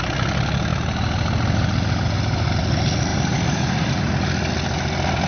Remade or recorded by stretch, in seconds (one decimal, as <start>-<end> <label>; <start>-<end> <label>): 0.0-0.7 recorded; 0.7-2.6 remade; 2.6-3.1 recorded; 3.1-4.1 remade; 4.1-5.3 recorded